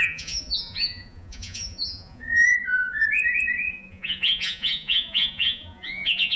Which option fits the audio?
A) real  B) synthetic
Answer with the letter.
B